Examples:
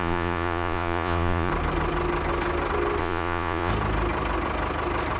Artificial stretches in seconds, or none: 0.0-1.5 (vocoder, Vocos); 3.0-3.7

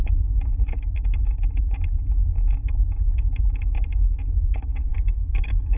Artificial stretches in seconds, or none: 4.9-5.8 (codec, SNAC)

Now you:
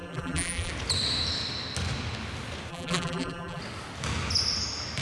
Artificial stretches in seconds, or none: 0.0-0.7 (vocoder, BigVGAN v2); 2.7-3.6

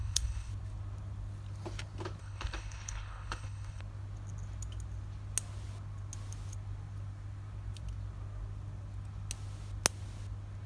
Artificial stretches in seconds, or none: 0.0-0.5 (codec, HILCodec); 2.2-3.8